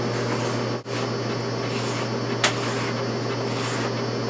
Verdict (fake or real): real